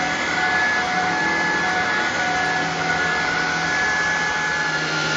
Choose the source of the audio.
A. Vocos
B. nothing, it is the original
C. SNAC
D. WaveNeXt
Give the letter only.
B